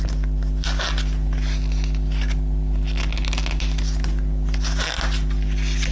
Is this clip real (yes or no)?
yes